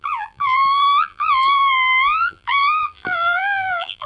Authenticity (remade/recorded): remade